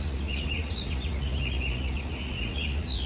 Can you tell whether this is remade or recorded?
remade